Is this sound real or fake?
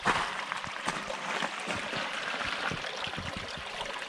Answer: real